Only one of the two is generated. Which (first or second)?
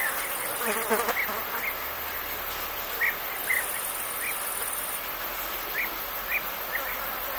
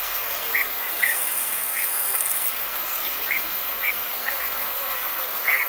second